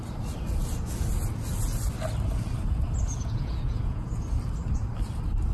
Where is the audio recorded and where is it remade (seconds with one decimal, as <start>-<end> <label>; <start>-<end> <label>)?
0.0-3.1 recorded; 3.1-4.1 remade; 4.1-5.5 recorded